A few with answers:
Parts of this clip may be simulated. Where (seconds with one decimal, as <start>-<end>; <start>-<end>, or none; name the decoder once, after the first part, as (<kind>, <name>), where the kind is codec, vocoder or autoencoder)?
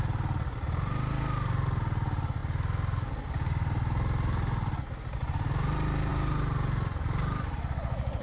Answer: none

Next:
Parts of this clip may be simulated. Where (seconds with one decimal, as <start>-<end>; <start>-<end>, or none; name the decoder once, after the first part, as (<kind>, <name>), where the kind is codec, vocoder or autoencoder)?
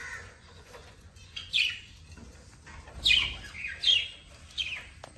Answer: 0.0-1.8 (vocoder, Vocos)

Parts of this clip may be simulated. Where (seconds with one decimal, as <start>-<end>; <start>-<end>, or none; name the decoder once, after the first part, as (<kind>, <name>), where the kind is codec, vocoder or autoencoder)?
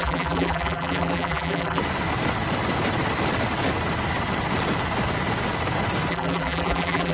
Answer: 0.0-1.8 (vocoder, BigVGAN v2); 6.1-7.1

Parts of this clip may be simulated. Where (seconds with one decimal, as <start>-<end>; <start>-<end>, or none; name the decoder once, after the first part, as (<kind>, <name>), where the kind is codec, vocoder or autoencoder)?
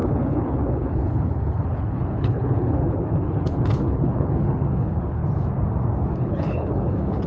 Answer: 0.0-5.2 (codec, HILCodec); 6.1-7.3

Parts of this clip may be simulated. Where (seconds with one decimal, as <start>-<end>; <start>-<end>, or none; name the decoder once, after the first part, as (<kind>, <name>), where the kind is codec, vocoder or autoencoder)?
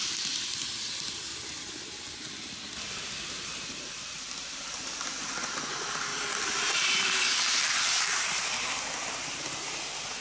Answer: 0.0-1.3 (vocoder, BigVGAN v2); 3.1-10.2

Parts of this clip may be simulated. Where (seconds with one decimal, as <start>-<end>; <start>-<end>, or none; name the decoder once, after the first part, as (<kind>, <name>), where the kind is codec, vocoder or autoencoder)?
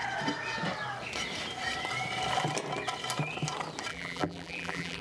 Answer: 3.9-5.0 (vocoder, BigVGAN v2)